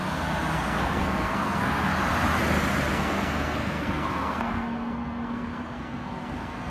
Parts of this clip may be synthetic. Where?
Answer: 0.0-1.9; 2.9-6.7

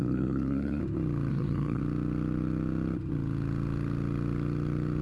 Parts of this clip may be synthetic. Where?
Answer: 0.0-0.8; 1.3-1.8

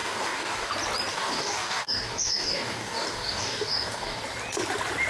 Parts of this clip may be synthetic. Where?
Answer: 0.0-0.7; 1.1-4.2